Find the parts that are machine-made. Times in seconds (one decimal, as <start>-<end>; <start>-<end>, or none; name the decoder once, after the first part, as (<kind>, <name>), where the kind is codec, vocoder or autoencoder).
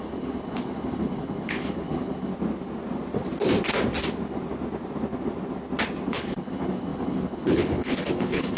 0.0-2.3 (codec, HILCodec); 6.1-8.6